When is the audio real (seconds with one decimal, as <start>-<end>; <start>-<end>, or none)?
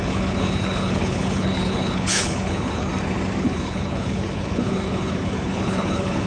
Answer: 2.9-3.4